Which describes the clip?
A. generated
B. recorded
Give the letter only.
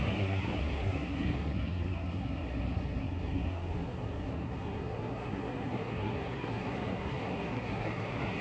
A